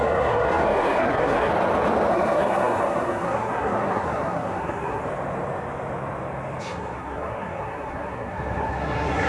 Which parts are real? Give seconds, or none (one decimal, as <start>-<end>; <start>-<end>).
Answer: 1.5-2.1; 5.0-6.6